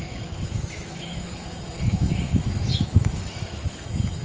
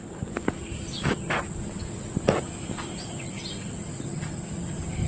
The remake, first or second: first